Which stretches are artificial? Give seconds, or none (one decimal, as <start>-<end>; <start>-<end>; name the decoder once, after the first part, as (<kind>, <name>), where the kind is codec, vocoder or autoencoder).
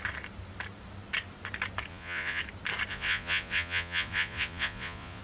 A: 1.9-2.4 (vocoder, Vocos); 2.9-5.2